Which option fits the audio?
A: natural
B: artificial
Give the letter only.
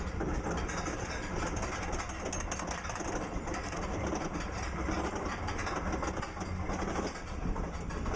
A